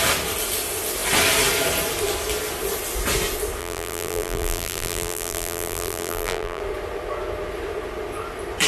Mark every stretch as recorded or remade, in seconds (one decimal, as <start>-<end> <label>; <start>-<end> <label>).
0.0-3.6 recorded; 3.6-6.6 remade; 6.6-8.7 recorded